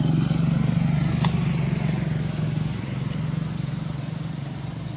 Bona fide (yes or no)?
yes